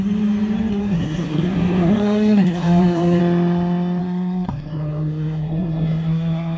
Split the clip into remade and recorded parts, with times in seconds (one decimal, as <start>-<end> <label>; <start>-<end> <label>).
0.0-0.8 recorded; 0.8-3.2 remade; 3.2-4.0 recorded; 4.0-6.6 remade